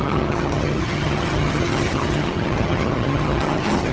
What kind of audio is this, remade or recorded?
remade